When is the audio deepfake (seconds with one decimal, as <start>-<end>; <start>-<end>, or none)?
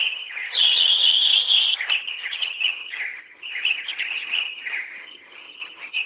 0.0-1.3; 2.0-6.0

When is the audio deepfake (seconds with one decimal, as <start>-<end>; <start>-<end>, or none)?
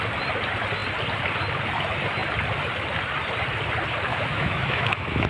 4.1-5.3